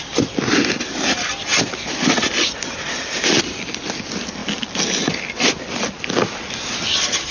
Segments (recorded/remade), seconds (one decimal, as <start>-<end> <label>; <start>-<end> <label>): 0.0-7.3 recorded